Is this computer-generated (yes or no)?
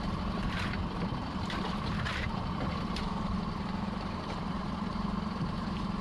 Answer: yes